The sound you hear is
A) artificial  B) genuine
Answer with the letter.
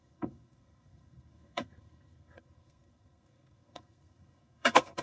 A